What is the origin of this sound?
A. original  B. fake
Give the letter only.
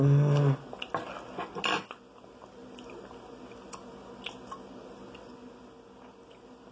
A